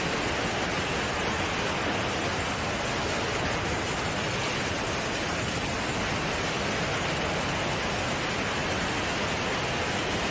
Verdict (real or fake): real